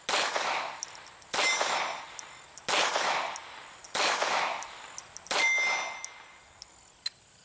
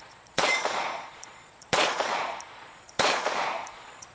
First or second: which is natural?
first